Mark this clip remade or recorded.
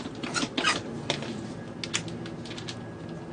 recorded